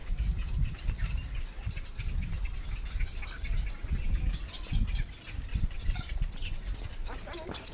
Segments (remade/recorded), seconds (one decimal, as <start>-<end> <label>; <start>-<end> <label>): 0.0-1.8 remade; 1.8-5.5 recorded; 5.5-6.9 remade; 6.9-7.7 recorded